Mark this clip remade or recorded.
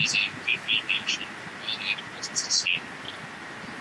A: recorded